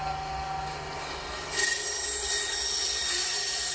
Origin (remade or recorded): recorded